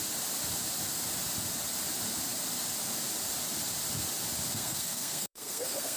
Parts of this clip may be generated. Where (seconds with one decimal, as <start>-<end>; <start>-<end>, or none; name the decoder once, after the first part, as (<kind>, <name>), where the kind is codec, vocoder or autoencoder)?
4.5-6.0 (codec, SNAC)